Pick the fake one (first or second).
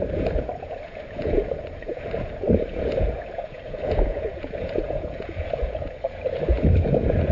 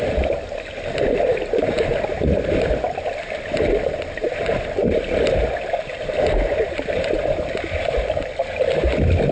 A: first